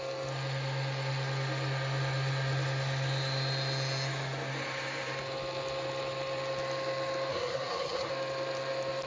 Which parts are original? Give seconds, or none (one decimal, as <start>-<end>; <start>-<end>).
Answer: 0.0-7.3; 8.1-9.1